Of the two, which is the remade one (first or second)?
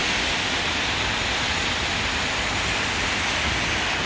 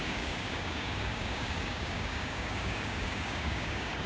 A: second